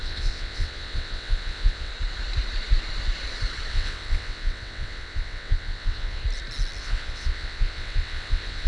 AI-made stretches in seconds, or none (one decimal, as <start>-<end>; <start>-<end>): 0.0-1.9; 3.7-6.2; 6.8-8.7